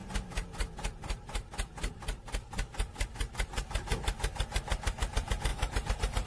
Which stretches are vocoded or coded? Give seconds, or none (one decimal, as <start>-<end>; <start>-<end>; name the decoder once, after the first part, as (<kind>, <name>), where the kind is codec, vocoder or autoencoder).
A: 5.5-6.3 (vocoder, BigVGAN v2)

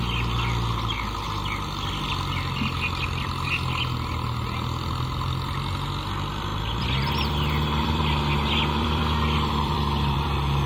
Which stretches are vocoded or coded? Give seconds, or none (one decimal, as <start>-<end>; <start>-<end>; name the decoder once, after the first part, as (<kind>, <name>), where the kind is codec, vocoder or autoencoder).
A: 6.5-10.7 (vocoder, BigVGAN v2)

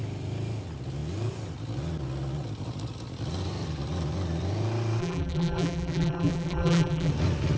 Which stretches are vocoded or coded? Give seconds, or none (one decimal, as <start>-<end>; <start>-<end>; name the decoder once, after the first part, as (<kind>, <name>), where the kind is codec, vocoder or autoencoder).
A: 5.0-7.1 (vocoder, BigVGAN v2)

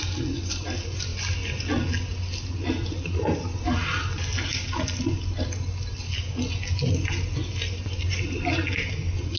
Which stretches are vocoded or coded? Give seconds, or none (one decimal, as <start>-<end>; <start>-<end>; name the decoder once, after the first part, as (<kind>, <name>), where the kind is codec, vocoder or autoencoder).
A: 4.5-5.9 (vocoder, BigVGAN v2); 7.4-8.4

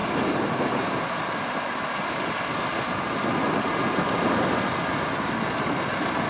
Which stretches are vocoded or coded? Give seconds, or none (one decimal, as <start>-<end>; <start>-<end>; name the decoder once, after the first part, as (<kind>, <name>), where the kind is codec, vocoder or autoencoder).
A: 0.0-2.2 (vocoder, BigVGAN v2)

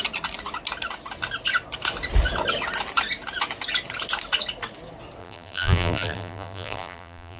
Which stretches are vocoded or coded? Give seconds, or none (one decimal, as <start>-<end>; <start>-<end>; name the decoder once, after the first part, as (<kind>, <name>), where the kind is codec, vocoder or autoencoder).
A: 5.2-7.4 (vocoder, BigVGAN v2)

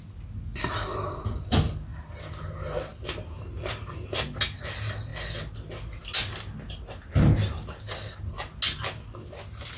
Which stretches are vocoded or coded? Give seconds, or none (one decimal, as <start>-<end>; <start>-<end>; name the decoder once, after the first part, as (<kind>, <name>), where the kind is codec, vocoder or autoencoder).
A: 0.5-1.2 (vocoder, BigVGAN v2); 1.9-2.5